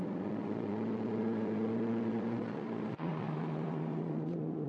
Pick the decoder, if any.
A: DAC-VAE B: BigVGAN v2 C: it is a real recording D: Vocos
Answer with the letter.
D